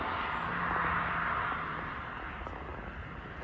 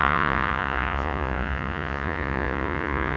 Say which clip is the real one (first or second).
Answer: first